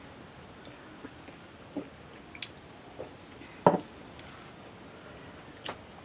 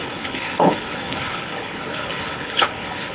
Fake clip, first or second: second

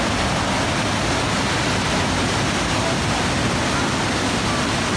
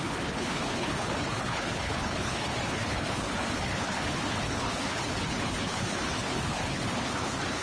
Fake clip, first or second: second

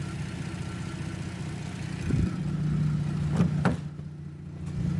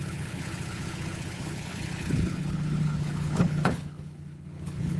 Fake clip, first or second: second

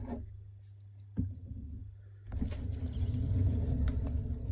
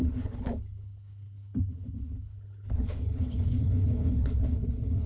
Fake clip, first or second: second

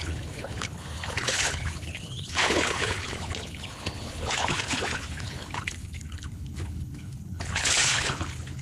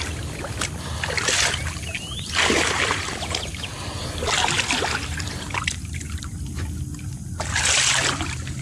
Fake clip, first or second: first